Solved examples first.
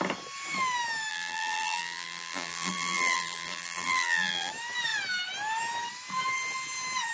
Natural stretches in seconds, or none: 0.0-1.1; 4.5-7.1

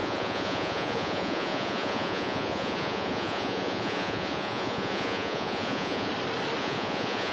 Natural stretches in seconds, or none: 6.1-6.6